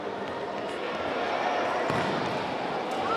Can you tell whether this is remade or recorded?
recorded